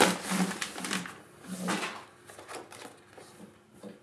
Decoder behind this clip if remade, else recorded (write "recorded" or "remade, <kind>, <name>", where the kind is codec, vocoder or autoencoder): recorded